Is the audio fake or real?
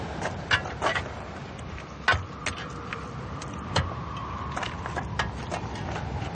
real